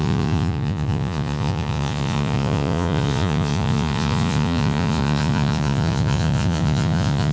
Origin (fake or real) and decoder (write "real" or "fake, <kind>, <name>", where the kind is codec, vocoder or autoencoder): fake, vocoder, Vocos